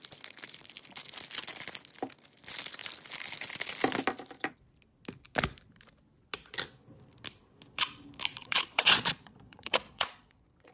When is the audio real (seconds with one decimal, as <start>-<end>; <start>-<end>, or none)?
0.0-8.4